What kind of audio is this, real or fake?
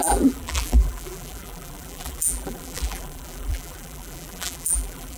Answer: fake